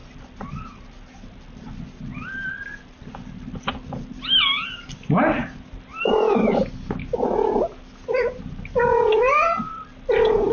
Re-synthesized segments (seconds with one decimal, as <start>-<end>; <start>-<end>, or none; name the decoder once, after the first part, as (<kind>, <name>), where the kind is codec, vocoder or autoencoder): 5.4-6.1 (vocoder, BigVGAN v2); 8.1-8.7